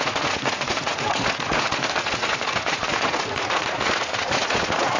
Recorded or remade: remade